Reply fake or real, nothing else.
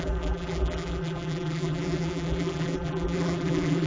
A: fake